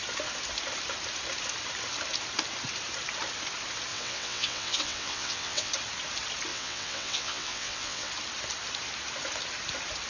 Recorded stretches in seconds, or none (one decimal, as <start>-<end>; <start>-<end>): 0.0-3.9; 5.7-6.5; 8.1-10.1